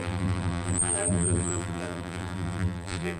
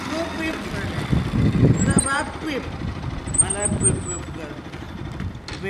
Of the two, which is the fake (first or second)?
first